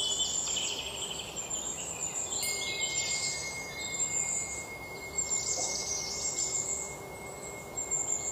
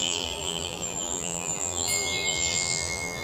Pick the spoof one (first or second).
second